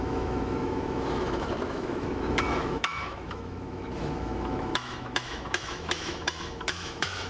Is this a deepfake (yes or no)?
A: yes